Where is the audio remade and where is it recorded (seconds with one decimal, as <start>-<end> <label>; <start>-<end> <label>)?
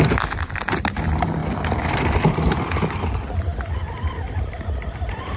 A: 0.0-5.4 remade